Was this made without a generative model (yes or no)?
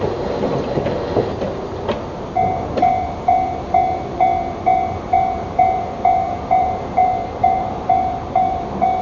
no